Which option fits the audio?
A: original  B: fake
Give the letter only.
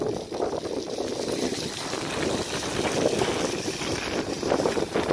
A